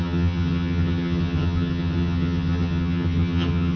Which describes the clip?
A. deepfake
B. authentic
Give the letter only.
A